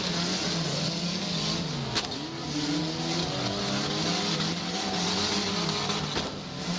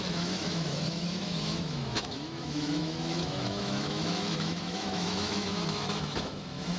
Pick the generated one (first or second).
second